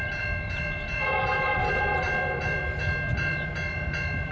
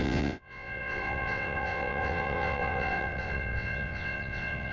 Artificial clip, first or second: second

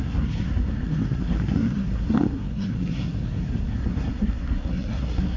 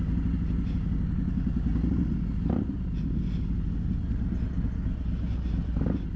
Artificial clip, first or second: first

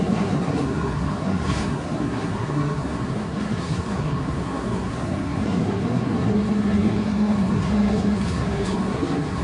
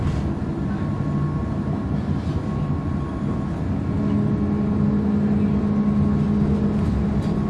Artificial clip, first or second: first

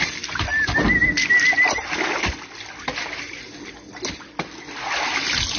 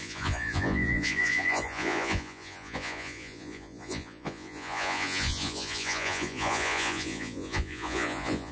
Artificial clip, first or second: second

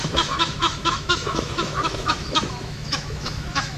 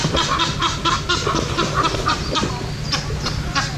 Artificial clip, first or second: first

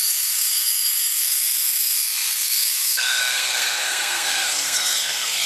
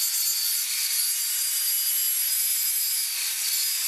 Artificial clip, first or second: first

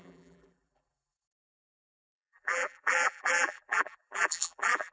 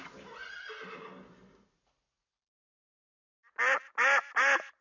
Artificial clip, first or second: first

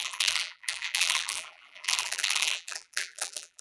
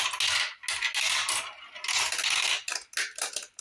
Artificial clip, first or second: first